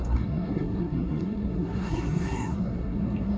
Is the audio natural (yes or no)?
no